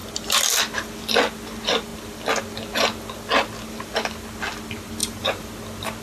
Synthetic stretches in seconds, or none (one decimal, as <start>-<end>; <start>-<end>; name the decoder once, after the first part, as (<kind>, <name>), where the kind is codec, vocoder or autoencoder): 5.0-5.5 (vocoder, BigVGAN v2)